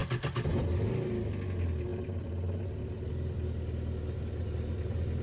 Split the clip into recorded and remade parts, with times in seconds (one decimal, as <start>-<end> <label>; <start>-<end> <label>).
0.0-5.2 recorded

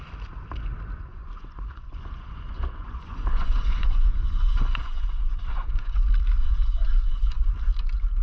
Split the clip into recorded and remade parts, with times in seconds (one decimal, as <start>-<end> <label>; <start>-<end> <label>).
0.0-1.1 recorded; 1.1-6.0 remade; 6.0-6.4 recorded; 6.4-7.5 remade; 7.5-8.2 recorded

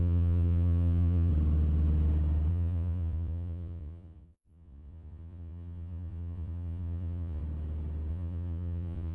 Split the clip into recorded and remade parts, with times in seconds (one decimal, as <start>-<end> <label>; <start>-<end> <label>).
0.0-1.3 remade; 1.3-2.5 recorded; 2.5-7.4 remade; 7.4-8.1 recorded; 8.1-9.1 remade

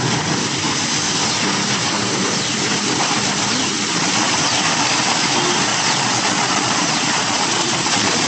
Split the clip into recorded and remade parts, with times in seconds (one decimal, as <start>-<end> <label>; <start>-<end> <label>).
0.0-3.7 recorded; 3.7-4.3 remade; 4.3-5.7 recorded; 5.7-8.3 remade

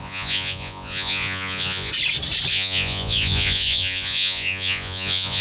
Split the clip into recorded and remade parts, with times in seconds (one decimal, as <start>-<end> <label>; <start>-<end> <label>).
0.0-1.9 remade; 1.9-2.5 recorded; 2.5-5.4 remade

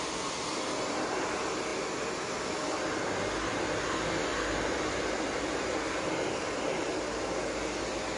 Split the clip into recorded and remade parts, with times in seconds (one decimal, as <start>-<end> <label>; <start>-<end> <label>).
0.0-8.2 recorded